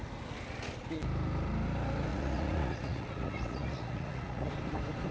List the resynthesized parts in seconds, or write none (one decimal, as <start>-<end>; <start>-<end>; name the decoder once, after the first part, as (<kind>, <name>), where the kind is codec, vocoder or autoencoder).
2.1-4.5 (vocoder, Vocos)